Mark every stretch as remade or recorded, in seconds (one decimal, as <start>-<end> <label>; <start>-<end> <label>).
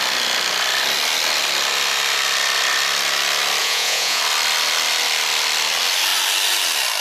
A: 0.0-3.6 recorded; 3.6-4.2 remade; 4.2-7.0 recorded